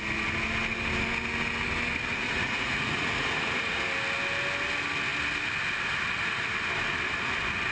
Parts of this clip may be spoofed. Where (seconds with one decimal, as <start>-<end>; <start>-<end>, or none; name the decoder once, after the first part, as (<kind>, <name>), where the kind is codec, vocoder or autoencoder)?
2.1-3.8 (vocoder, Vocos)